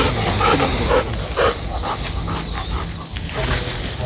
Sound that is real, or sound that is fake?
real